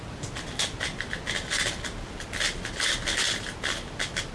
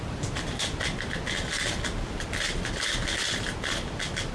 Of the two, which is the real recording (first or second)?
first